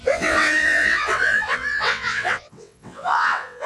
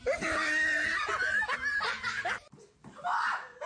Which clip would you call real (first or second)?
second